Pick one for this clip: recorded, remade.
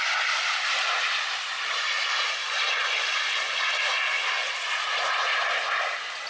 recorded